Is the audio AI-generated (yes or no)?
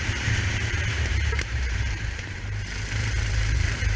yes